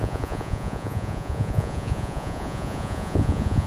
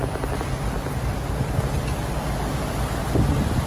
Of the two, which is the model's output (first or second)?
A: first